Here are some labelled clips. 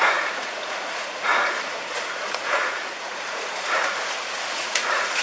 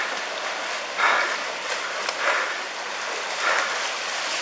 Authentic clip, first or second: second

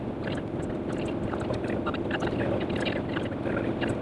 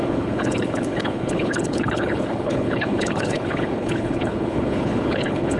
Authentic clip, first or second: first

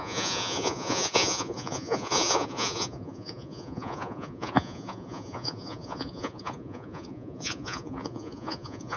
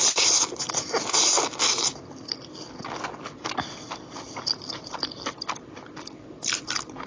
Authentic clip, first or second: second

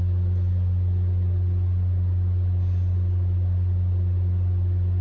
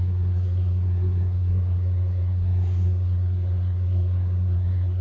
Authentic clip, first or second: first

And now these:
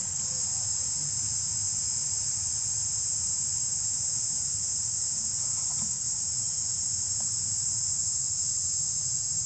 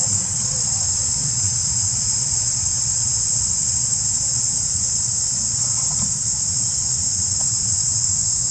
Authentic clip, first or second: first